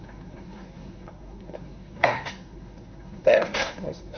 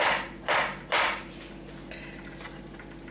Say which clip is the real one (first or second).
second